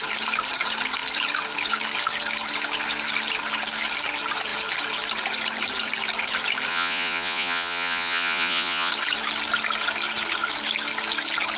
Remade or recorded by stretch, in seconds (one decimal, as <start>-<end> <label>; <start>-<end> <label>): 0.0-6.7 recorded; 6.7-8.9 remade; 8.9-11.6 recorded